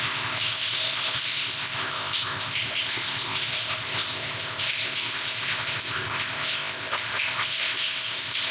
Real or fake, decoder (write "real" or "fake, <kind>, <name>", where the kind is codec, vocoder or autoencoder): fake, codec, ZipCodec